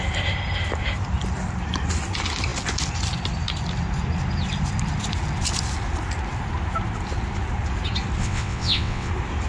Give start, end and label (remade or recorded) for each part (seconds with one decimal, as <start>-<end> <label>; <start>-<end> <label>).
0.0-8.2 recorded; 8.2-9.1 remade; 9.1-9.5 recorded